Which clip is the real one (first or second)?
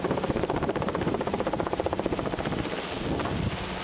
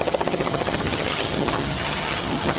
first